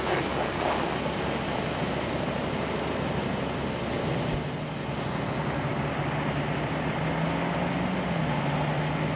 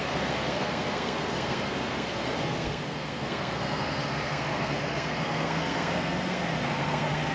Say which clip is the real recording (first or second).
first